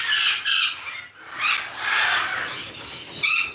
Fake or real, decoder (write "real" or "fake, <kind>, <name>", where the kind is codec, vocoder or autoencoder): real